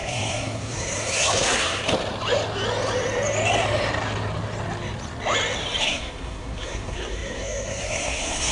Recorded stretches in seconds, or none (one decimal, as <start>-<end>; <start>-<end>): 1.8-5.8